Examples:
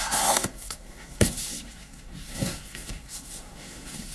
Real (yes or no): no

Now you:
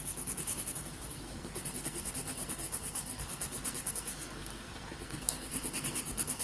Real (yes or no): no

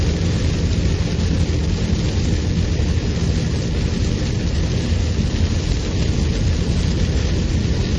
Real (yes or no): yes